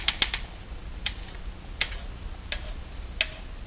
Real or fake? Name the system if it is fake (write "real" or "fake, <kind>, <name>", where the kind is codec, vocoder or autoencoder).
real